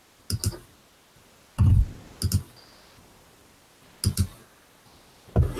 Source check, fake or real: real